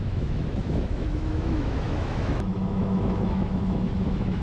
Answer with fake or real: fake